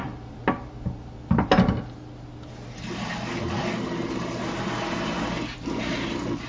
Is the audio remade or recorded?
recorded